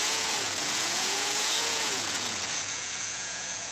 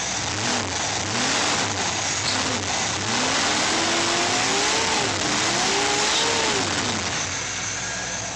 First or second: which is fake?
first